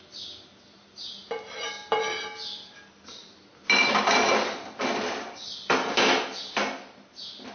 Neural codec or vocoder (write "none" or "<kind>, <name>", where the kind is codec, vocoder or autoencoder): none